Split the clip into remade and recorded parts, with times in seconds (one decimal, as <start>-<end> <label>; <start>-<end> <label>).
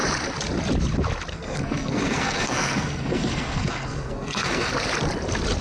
0.0-1.3 recorded; 1.3-4.7 remade; 4.7-5.6 recorded